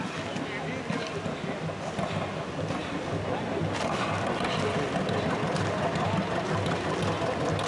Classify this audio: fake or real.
real